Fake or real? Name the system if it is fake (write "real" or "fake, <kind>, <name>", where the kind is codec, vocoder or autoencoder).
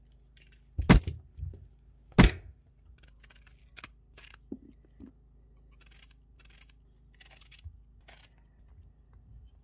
real